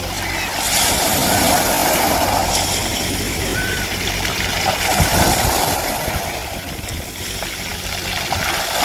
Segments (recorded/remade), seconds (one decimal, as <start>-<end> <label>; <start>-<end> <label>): 0.0-1.8 recorded; 1.8-2.5 remade; 2.5-3.5 recorded; 3.5-4.8 remade; 4.8-8.8 recorded